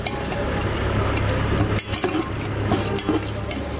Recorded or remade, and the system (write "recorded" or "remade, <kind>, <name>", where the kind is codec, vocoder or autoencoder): recorded